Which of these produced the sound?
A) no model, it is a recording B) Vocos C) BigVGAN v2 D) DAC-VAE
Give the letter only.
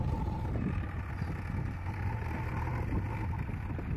A